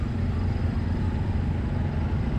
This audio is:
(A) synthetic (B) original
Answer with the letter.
B